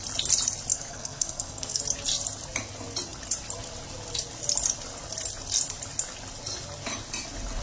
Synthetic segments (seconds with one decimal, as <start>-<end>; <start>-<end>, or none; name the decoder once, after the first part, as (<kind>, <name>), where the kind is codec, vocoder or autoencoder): 0.7-1.8 (codec, SNAC)